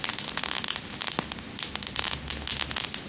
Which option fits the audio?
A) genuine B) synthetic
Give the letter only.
A